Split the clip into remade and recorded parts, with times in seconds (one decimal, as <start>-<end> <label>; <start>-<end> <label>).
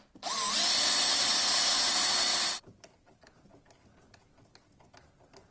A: 0.0-2.3 recorded; 2.3-3.5 remade; 3.5-5.5 recorded